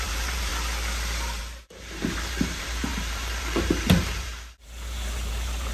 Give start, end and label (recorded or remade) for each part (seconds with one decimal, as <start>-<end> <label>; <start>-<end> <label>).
0.0-0.5 remade; 0.5-1.4 recorded; 1.4-5.7 remade